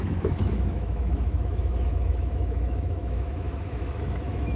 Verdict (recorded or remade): remade